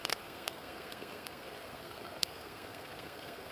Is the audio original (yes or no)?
no